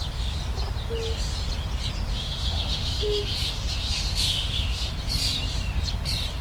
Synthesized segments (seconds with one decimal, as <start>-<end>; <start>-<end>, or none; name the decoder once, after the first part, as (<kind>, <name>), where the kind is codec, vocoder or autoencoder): 2.1-4.9 (autoencoder, DAC-VAE)